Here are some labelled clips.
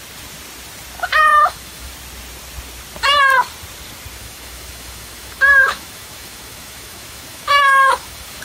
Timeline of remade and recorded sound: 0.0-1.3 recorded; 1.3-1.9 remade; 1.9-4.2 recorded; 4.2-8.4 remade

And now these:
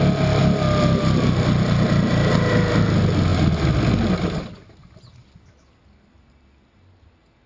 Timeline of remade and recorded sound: 0.0-7.5 recorded

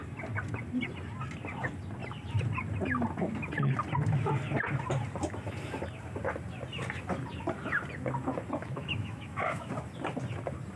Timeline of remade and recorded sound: 0.0-8.6 recorded; 8.6-9.7 remade; 9.7-10.8 recorded